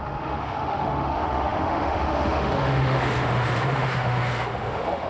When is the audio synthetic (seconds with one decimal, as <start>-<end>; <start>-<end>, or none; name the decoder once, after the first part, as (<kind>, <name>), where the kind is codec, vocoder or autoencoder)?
0.0-5.1 (autoencoder, DAC-VAE)